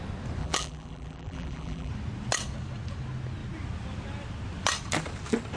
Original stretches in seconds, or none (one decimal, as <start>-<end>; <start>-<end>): 0.0-0.4; 1.9-5.6